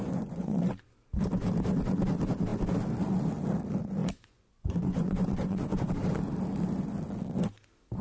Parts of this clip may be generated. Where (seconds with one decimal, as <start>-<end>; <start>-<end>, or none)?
0.0-0.6; 4.0-5.9